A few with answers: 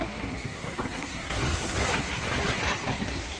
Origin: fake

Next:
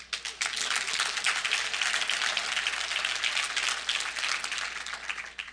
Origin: real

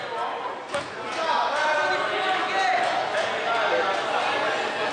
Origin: real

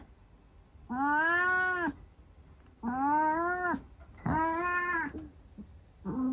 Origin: real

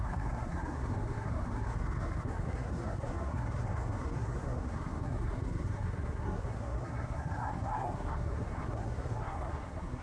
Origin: fake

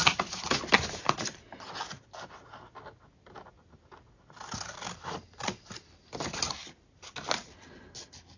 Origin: real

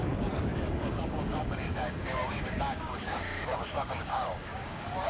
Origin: fake